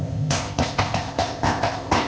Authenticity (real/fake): fake